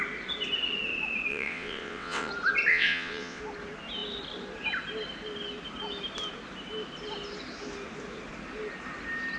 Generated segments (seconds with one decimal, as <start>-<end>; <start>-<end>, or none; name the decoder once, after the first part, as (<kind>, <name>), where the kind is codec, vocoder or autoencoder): 1.3-2.3 (vocoder, WaveNeXt); 2.7-3.4